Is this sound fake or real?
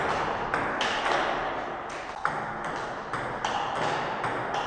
real